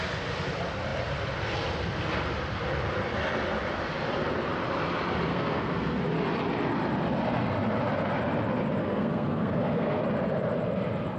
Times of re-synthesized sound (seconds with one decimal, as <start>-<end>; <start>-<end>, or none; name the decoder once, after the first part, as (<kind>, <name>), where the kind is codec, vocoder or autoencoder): 5.3-6.0 (codec, SNAC); 8.8-10.0